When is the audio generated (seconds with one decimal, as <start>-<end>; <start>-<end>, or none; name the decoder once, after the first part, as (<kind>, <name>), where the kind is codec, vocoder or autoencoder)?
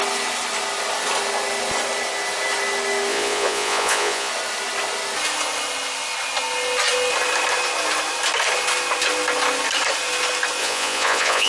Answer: 3.1-4.3 (vocoder, Vocos); 10.6-11.5